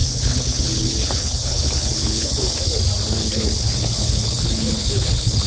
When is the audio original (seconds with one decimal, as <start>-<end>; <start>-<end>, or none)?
2.8-3.2